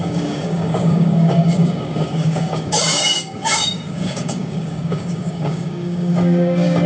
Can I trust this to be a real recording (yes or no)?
no